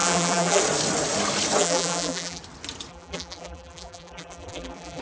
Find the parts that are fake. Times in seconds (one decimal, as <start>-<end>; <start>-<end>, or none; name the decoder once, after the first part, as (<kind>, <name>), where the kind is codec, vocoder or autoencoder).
0.0-0.6 (vocoder, BigVGAN v2); 1.6-2.4; 2.9-5.0